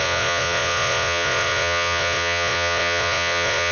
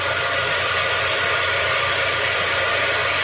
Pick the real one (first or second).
second